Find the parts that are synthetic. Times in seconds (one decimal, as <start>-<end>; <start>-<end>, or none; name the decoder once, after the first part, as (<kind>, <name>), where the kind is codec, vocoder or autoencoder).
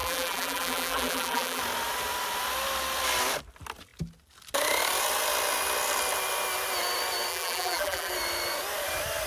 0.0-1.6 (vocoder, BigVGAN v2); 7.3-8.1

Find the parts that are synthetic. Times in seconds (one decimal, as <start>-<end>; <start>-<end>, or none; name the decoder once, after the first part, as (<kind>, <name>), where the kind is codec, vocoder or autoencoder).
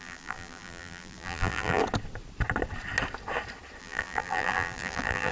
0.0-1.8 (vocoder, BigVGAN v2); 3.8-5.3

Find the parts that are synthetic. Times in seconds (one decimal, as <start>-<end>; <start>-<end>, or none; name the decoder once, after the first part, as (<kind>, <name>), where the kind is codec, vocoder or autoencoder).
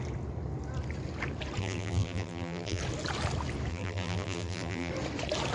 1.6-2.8 (vocoder, BigVGAN v2); 3.7-4.9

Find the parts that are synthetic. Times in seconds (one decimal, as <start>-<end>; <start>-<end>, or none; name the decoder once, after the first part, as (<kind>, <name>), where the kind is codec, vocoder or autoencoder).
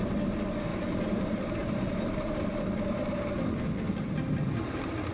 0.7-1.2 (vocoder, BigVGAN v2); 1.6-3.5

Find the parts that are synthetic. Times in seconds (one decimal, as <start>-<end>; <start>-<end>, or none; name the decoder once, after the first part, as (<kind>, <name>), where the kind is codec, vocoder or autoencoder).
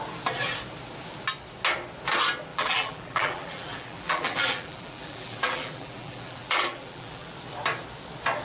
2.5-7.3 (vocoder, BigVGAN v2)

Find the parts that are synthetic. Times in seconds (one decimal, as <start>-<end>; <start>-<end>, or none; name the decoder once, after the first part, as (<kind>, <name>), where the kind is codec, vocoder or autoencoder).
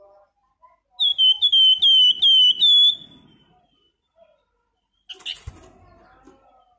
none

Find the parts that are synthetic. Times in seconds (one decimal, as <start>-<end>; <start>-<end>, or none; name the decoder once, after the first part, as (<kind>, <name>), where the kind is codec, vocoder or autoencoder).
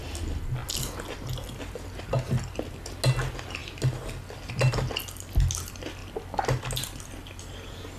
none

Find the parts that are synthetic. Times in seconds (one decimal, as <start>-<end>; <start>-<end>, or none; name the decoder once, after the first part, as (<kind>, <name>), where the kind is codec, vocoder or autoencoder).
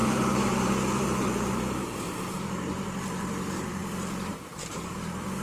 0.0-3.8 (vocoder, BigVGAN v2); 4.3-5.4